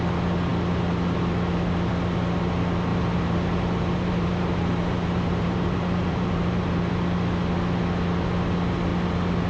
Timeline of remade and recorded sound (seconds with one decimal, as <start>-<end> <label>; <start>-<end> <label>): 0.0-2.9 recorded; 2.9-6.9 remade; 6.9-9.5 recorded